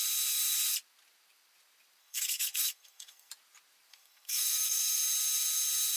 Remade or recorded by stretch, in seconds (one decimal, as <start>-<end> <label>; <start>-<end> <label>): 0.0-2.0 recorded; 2.0-3.3 remade; 3.3-3.9 recorded; 3.9-5.0 remade; 5.0-6.0 recorded